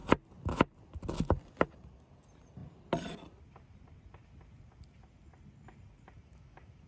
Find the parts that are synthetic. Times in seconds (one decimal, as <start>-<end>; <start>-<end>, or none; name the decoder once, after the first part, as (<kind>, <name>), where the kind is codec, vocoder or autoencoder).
none